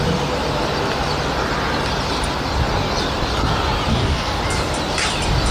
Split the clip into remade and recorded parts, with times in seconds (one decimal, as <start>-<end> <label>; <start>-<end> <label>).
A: 0.0-3.9 recorded; 3.9-4.4 remade; 4.4-5.5 recorded